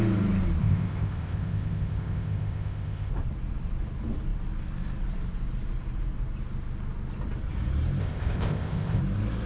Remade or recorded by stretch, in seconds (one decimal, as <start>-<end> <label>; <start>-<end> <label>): 0.0-0.6 recorded; 0.6-3.1 remade; 3.1-8.0 recorded; 8.0-9.0 remade; 9.0-9.5 recorded